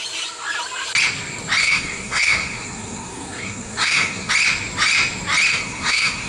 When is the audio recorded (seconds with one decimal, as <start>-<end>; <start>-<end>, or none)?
0.0-1.6; 4.3-5.5